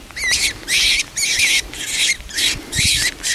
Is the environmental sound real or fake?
real